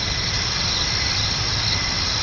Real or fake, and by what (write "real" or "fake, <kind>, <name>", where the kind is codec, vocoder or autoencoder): real